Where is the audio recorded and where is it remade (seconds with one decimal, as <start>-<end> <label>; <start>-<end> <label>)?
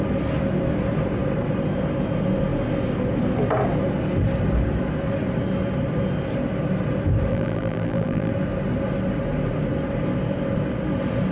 0.0-7.3 recorded; 7.3-8.3 remade; 8.3-11.3 recorded